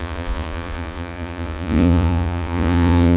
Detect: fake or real fake